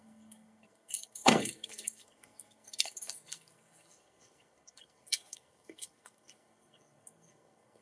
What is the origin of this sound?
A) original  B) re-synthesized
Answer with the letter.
B